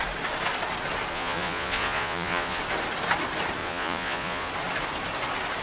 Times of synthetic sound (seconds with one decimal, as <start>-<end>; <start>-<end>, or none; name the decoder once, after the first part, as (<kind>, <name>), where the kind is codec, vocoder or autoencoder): 1.1-2.6 (vocoder, Vocos); 3.6-4.5

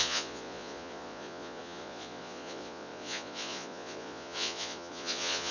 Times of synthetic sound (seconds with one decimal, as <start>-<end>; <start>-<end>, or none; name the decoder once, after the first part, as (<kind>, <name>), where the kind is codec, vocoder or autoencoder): 0.0-5.5 (vocoder, Vocos)